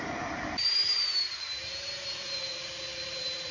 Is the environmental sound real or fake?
fake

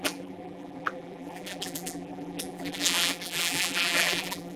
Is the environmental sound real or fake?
fake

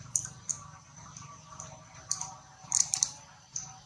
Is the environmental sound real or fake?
fake